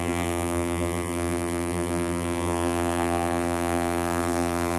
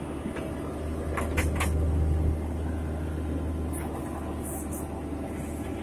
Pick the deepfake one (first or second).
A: first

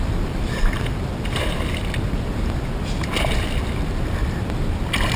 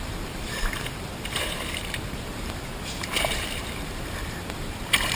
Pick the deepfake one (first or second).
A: second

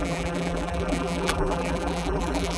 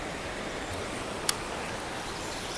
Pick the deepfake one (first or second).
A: first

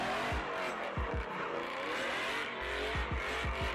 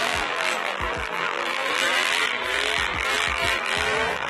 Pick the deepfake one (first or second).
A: second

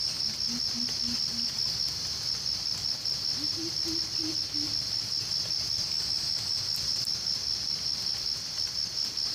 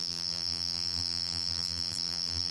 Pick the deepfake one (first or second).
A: second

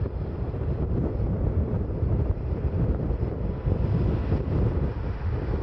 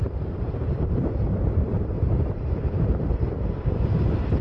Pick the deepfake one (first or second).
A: second